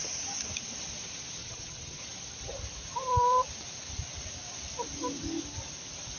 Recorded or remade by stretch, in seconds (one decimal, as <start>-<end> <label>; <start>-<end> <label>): 0.0-1.4 recorded; 1.4-2.0 remade; 2.0-6.2 recorded